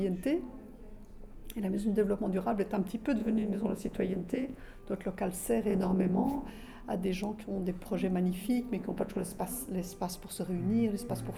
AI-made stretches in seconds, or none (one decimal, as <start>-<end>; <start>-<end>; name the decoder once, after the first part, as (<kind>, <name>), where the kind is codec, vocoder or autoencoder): 3.2-4.6 (vocoder, Vocos); 5.7-6.5; 8.8-9.4